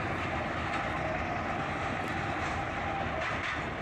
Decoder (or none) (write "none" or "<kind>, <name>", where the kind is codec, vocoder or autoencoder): none